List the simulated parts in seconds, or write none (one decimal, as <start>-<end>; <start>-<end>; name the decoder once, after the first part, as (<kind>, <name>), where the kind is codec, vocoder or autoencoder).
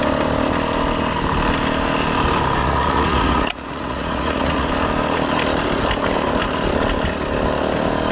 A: 2.6-4.7 (vocoder, Vocos)